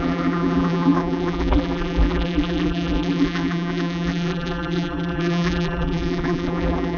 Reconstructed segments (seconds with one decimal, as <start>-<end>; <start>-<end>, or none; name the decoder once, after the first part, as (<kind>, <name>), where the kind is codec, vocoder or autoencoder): 0.0-7.0 (vocoder, BigVGAN v2)